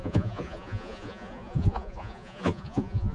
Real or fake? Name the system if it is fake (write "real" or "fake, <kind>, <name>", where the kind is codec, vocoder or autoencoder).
fake, vocoder, Vocos